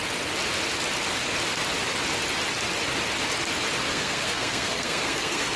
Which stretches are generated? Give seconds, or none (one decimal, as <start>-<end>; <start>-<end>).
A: 3.9-5.6